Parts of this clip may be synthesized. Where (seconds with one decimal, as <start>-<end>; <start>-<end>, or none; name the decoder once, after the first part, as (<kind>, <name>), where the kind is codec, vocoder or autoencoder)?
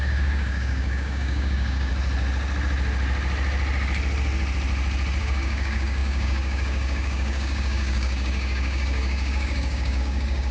0.0-1.9 (codec, DAC); 5.2-10.5